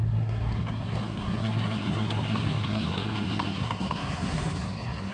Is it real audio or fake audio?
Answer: fake